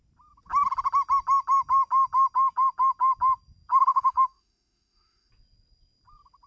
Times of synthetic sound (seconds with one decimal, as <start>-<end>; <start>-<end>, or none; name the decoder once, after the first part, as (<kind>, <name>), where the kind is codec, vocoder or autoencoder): 3.9-5.3 (autoencoder, DAC-VAE)